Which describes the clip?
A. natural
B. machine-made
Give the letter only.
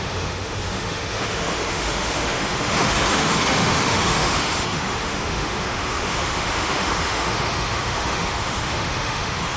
B